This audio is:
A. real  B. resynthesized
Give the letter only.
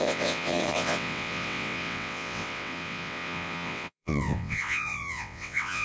B